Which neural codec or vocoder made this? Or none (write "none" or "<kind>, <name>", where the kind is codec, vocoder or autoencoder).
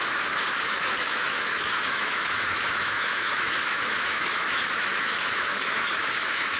autoencoder, DAC-VAE